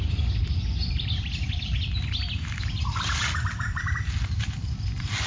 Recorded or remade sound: recorded